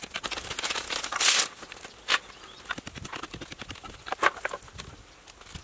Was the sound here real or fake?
real